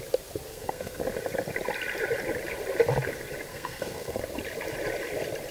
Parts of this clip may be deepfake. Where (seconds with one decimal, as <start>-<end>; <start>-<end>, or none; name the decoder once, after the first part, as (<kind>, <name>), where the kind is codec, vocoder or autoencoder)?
0.5-1.0 (codec, SNAC); 3.5-4.2